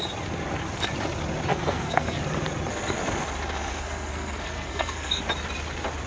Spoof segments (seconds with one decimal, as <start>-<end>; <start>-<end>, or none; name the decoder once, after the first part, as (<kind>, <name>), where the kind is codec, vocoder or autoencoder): 1.5-2.2 (codec, SNAC); 3.7-5.2